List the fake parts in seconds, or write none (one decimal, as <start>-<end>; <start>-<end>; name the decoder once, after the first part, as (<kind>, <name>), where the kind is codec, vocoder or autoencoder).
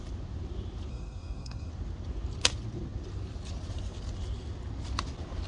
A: 0.9-1.7 (codec, SNAC)